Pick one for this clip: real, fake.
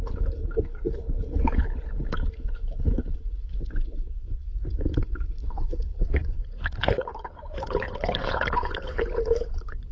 fake